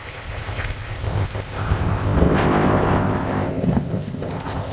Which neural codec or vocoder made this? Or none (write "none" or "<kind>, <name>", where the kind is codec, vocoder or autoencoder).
codec, ZipCodec